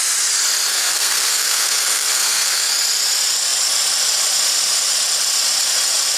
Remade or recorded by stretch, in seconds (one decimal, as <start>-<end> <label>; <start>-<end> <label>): 0.0-0.7 recorded; 0.7-2.7 remade; 2.7-6.2 recorded